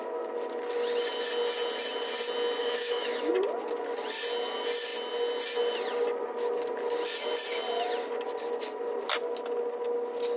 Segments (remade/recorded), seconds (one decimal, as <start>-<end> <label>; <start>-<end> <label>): 0.0-2.6 recorded; 2.6-3.3 remade; 3.3-10.4 recorded